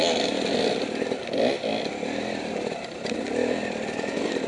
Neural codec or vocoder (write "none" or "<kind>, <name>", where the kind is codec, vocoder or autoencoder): none